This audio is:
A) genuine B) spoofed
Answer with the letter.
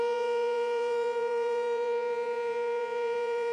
B